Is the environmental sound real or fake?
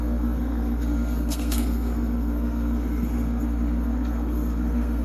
fake